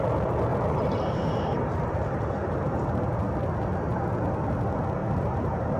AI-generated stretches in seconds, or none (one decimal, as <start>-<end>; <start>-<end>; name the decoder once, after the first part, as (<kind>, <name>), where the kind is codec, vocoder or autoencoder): 0.5-3.0 (vocoder, BigVGAN v2); 5.0-5.8